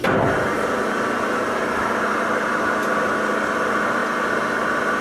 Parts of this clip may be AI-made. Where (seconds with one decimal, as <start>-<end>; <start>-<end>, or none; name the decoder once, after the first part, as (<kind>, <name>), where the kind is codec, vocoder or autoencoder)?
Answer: none